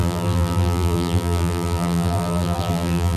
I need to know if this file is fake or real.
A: fake